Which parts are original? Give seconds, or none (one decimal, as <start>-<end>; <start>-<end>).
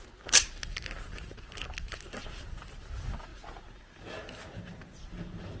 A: 0.0-5.6